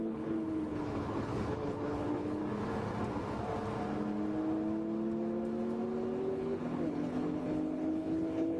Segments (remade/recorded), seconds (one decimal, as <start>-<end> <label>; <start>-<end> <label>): 0.0-2.4 remade; 2.4-6.2 recorded; 6.2-8.6 remade